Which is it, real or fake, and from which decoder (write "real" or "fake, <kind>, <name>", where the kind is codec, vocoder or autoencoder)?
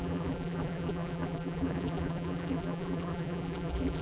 fake, vocoder, BigVGAN v2